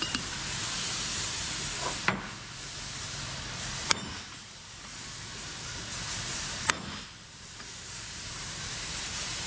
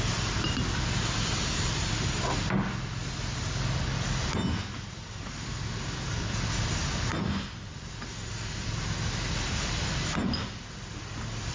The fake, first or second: first